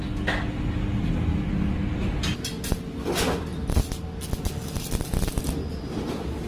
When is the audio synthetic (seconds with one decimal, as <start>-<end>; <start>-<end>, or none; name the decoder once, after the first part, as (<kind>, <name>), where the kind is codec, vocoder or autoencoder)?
none